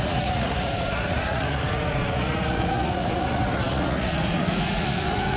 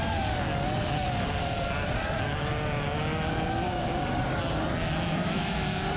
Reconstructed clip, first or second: first